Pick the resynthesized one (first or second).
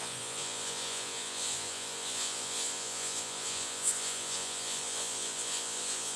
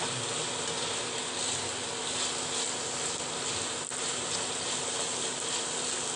first